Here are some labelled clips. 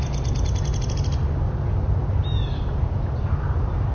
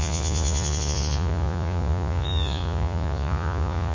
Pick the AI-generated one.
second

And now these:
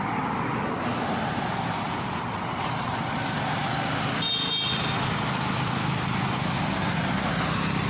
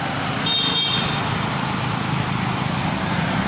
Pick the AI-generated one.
second